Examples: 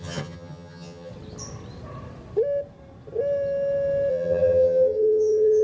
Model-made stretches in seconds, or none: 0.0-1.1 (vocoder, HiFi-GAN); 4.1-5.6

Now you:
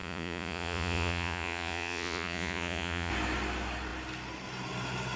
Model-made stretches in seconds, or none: 0.0-3.1 (vocoder, Vocos)